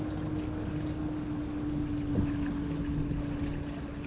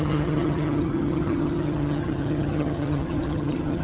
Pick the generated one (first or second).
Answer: second